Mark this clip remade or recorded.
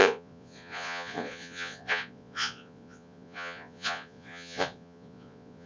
remade